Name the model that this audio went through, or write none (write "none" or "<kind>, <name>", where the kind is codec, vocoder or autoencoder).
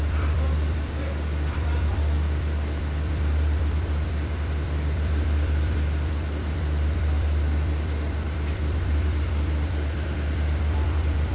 vocoder, BigVGAN v2